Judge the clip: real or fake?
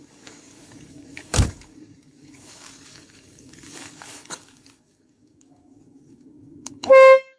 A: fake